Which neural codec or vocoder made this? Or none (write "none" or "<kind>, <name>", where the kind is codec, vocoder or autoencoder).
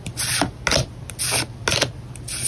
none